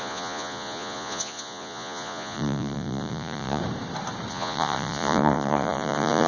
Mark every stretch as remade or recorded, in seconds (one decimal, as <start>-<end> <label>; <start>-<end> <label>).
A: 0.0-3.6 remade; 3.6-4.3 recorded; 4.3-6.3 remade